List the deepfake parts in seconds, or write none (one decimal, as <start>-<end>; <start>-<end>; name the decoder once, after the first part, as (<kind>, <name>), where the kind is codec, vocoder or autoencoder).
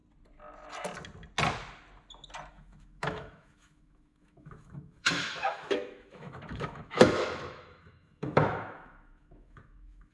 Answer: 2.5-10.1 (autoencoder, DAC-VAE)